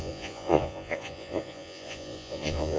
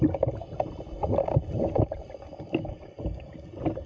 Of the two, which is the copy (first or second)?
first